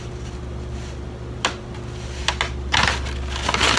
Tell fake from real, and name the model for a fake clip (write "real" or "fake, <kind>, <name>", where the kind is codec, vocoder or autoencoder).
real